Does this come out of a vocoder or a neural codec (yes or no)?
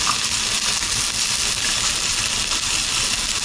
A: no